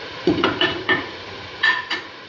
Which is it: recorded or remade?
remade